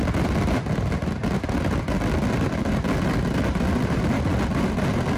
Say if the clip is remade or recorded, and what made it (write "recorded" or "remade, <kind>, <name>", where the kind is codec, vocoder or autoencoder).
recorded